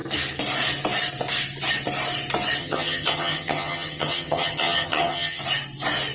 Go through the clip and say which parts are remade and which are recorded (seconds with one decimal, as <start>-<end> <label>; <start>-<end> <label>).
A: 0.0-2.6 recorded; 2.6-5.4 remade; 5.4-6.1 recorded